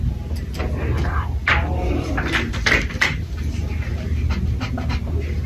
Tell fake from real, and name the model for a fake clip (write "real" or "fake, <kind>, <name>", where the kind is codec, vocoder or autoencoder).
real